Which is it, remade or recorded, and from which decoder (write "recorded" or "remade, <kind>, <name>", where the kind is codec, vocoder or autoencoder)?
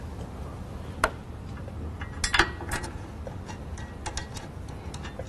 recorded